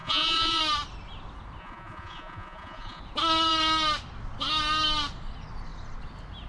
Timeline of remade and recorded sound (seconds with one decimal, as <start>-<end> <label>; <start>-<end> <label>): 0.0-0.6 remade; 0.6-1.6 recorded; 1.6-3.0 remade; 3.0-6.5 recorded